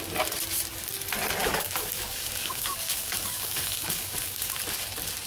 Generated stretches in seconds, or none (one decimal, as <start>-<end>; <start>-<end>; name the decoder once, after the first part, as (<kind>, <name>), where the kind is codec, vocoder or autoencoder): 1.4-4.6 (codec, DAC)